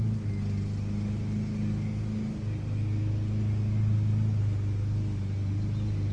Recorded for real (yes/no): yes